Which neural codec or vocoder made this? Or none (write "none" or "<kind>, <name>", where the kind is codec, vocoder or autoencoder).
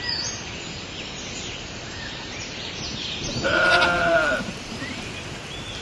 vocoder, BigVGAN v2